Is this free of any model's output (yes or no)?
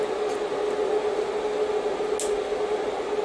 yes